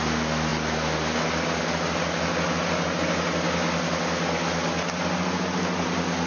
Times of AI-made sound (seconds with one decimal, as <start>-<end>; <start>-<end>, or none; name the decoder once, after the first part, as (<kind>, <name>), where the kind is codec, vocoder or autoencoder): none